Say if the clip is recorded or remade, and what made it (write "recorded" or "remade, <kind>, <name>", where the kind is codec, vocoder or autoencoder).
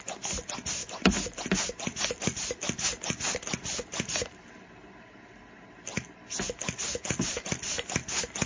recorded